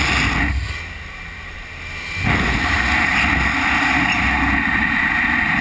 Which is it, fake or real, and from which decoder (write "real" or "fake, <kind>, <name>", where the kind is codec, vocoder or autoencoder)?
real